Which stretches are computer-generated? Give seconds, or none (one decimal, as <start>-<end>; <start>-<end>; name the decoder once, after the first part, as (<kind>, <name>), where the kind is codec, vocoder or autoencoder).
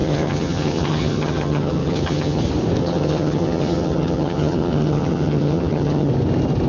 0.0-2.4 (vocoder, HiFi-GAN); 2.8-6.1